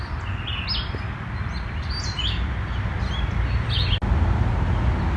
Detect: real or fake real